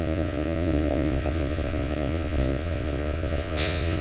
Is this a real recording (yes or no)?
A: no